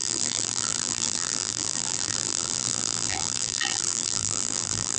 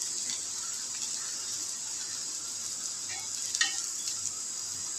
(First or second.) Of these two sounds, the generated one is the first